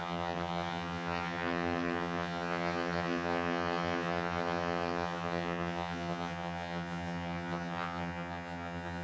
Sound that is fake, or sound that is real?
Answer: fake